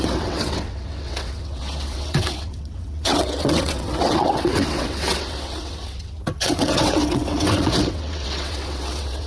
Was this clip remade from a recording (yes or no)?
yes